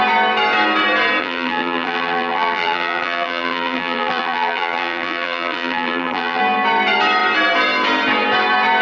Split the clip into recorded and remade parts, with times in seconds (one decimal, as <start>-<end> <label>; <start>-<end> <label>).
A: 0.0-1.2 recorded; 1.2-6.4 remade; 6.4-8.8 recorded